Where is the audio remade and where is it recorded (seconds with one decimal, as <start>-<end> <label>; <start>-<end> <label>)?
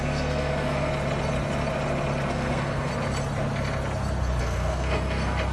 0.0-0.9 remade; 0.9-2.3 recorded; 2.3-2.9 remade; 2.9-4.4 recorded; 4.4-5.5 remade